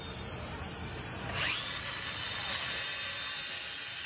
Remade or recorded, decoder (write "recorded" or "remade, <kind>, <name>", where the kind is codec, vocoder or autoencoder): recorded